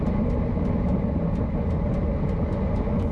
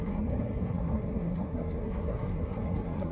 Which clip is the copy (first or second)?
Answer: second